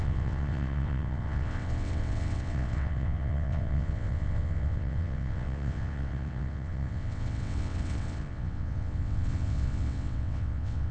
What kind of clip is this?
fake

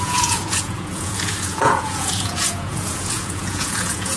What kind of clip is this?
fake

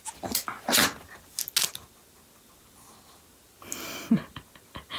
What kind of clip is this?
real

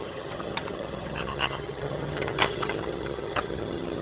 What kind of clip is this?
fake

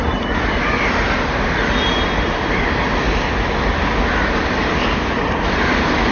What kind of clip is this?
real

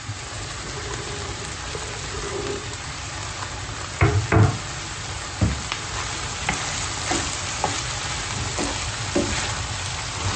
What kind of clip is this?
real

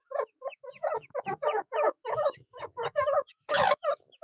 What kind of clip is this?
fake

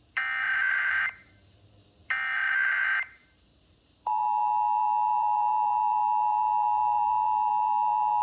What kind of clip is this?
fake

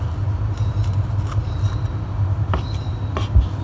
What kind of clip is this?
real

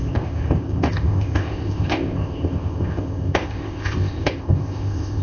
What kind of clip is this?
fake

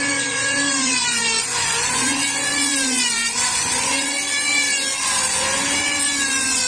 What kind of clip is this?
fake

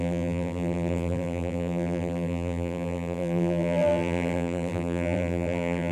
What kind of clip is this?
fake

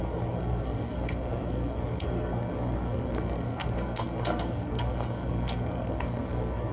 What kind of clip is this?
fake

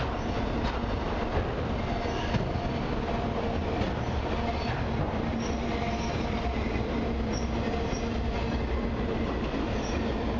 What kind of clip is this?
real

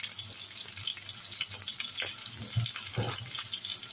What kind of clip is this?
real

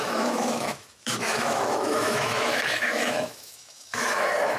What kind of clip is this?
fake